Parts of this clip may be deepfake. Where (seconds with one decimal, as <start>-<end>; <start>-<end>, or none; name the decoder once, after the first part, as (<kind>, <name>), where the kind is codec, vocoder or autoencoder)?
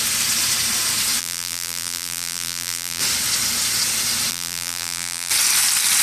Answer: 1.2-3.0 (vocoder, BigVGAN v2); 4.3-5.3